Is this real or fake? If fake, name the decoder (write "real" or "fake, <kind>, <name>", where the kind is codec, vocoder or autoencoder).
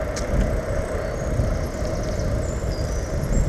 real